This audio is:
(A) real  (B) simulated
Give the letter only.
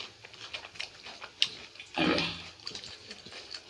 A